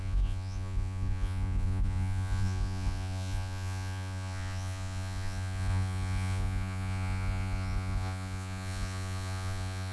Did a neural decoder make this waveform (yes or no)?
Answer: yes